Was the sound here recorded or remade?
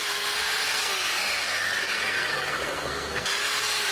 remade